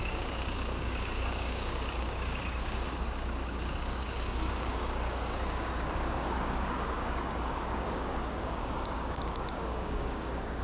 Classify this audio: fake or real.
fake